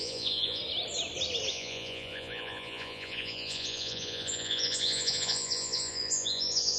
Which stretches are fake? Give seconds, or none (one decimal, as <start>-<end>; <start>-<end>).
0.0-0.6; 1.5-6.8